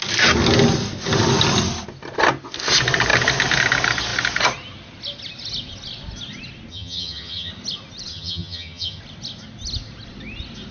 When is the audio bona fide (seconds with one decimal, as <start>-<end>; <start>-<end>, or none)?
0.0-6.7; 7.5-8.1; 9.0-10.7